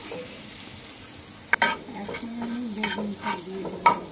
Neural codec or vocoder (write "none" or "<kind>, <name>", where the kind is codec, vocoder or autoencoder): none